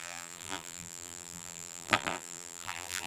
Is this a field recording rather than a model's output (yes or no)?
no